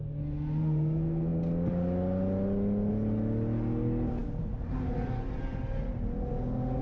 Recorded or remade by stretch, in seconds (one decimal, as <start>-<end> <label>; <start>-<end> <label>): 0.0-6.8 recorded